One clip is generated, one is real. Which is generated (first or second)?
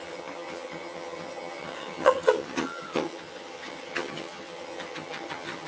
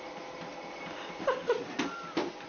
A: first